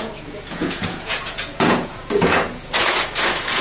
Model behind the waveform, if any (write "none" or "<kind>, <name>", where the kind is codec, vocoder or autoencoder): vocoder, Vocos